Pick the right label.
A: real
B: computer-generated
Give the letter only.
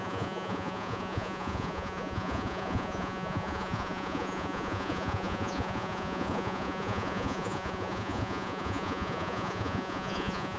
B